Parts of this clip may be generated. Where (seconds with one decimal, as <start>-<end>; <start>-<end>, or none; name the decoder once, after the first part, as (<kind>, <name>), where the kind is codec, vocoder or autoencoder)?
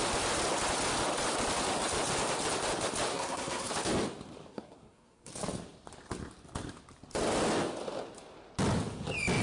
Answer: 3.1-3.7 (codec, SNAC); 4.5-5.3